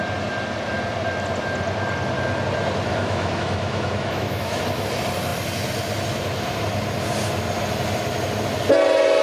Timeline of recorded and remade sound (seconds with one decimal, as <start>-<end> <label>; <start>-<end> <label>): 0.0-2.9 recorded; 2.9-4.6 remade; 4.6-9.2 recorded